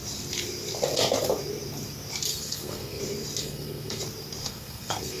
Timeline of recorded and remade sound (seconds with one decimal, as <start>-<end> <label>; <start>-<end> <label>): 0.0-2.3 recorded; 2.3-3.0 remade; 3.0-3.4 recorded; 3.4-4.0 remade; 4.0-4.4 recorded; 4.4-5.2 remade